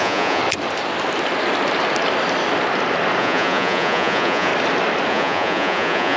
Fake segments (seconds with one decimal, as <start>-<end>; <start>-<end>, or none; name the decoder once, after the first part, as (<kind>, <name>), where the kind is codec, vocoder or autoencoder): 0.0-0.4 (vocoder, Vocos); 3.2-4.5; 5.1-6.2

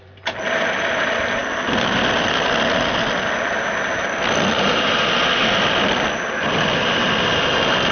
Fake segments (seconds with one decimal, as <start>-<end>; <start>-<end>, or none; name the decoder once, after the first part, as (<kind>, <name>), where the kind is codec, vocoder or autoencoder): none

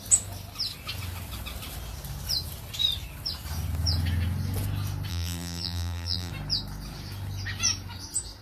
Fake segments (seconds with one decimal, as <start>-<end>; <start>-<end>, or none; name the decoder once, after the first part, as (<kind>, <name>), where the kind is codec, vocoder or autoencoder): 5.1-6.3 (vocoder, BigVGAN v2)

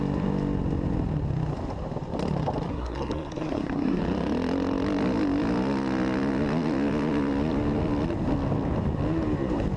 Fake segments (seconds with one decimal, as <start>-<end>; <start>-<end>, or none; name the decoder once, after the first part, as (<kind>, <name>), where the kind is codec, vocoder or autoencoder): 2.7-4.0 (codec, SNAC)

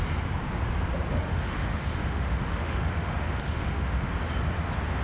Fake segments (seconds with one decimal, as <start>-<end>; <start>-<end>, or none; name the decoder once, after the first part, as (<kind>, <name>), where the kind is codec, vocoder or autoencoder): 1.1-4.1 (autoencoder, DAC-VAE)

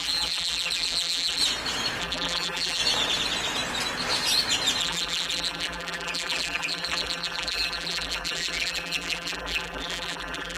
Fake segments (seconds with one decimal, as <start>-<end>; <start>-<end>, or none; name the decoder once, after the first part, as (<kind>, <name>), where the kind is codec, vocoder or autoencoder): 0.0-1.4 (vocoder, BigVGAN v2); 2.0-2.8; 4.8-10.6

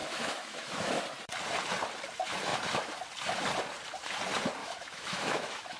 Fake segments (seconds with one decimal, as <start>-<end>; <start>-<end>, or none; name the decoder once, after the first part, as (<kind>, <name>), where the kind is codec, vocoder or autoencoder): 0.0-1.0 (autoencoder, DAC-VAE); 4.6-5.8

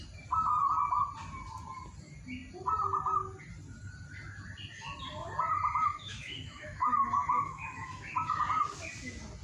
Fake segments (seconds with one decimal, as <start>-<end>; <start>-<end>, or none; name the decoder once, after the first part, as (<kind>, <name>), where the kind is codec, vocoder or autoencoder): 5.5-8.4 (autoencoder, DAC-VAE)